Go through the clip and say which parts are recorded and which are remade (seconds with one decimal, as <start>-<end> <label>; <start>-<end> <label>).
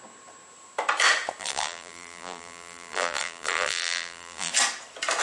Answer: 0.0-1.4 recorded; 1.4-4.5 remade; 4.5-5.2 recorded